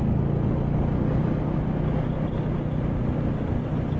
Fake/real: real